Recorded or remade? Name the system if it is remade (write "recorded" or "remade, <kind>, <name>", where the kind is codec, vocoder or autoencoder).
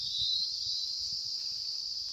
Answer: recorded